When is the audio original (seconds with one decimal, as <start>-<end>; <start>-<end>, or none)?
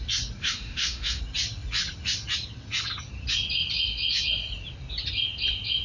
0.0-0.4; 1.2-5.8